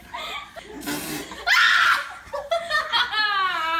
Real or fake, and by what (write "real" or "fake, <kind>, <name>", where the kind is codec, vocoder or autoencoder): real